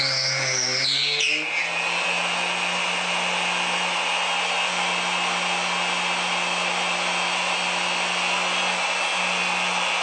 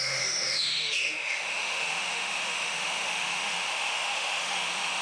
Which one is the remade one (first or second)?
second